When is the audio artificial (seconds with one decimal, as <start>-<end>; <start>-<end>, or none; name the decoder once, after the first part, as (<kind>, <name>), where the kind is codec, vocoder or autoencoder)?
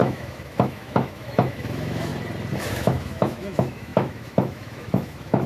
0.0-2.1 (autoencoder, DAC-VAE); 2.7-5.5